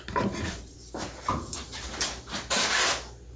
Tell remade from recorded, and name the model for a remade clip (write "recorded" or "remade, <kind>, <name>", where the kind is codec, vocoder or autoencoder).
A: recorded